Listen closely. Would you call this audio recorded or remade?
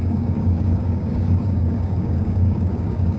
remade